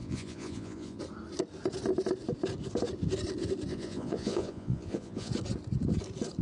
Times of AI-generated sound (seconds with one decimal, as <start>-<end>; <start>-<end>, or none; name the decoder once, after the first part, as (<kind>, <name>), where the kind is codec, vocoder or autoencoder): 0.0-1.0 (vocoder, Vocos); 3.7-5.3